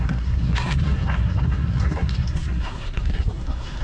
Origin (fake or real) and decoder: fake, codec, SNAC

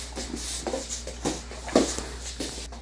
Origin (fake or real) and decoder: real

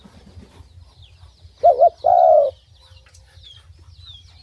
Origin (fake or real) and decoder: real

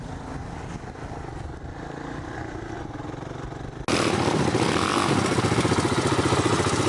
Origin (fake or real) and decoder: real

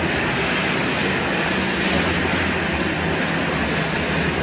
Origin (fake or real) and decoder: real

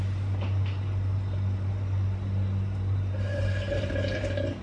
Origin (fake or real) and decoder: real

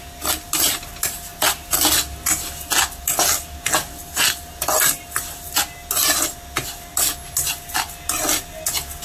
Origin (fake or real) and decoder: real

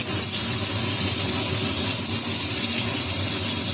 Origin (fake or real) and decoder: real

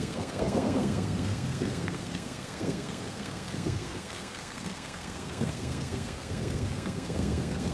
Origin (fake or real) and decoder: fake, codec, SNAC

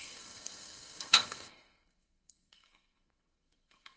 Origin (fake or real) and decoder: fake, codec, SNAC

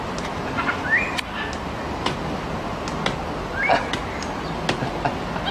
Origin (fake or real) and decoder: real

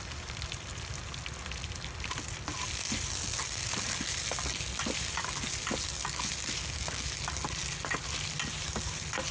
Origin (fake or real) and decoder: real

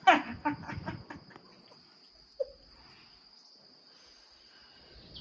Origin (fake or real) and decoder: real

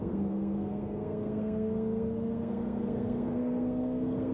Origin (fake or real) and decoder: fake, codec, SNAC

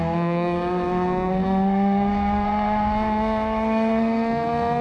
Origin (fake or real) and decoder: fake, codec, SNAC